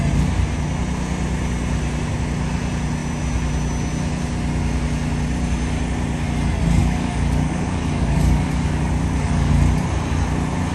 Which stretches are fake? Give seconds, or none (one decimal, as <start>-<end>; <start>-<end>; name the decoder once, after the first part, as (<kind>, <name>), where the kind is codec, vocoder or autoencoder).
6.8-9.5 (codec, DAC)